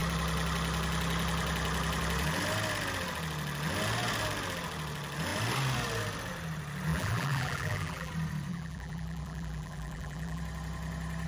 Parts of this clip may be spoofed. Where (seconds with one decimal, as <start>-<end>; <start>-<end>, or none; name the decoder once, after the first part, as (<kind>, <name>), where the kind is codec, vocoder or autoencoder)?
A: 6.9-8.1 (vocoder, BigVGAN v2); 8.5-10.4